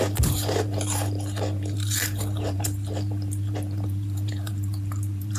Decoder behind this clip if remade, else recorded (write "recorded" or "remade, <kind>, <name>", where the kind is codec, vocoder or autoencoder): remade, vocoder, BigVGAN v2